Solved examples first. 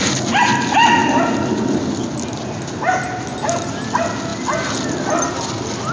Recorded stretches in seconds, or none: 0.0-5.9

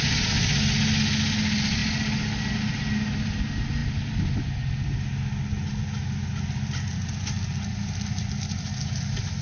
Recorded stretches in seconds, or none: 0.0-9.4

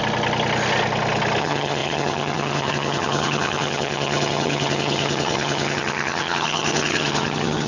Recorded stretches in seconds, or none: 0.0-1.4

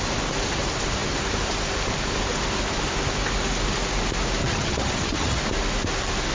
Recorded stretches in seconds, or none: 0.0-4.4; 5.4-6.3

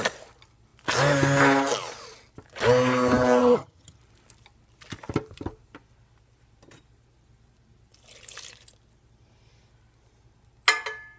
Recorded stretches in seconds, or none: 0.0-3.4; 4.0-11.2